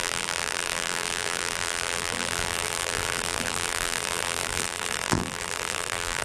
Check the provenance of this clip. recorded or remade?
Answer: remade